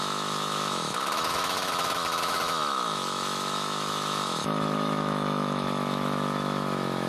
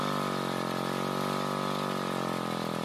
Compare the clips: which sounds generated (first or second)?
first